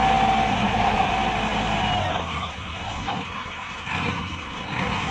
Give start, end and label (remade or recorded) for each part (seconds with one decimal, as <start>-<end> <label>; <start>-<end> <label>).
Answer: 0.0-0.5 recorded; 0.5-1.1 remade; 1.1-2.1 recorded; 2.1-5.1 remade